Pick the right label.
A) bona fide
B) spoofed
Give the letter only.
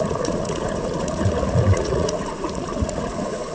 B